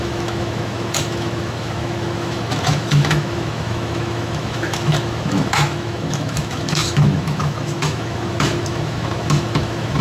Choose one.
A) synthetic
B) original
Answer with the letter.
A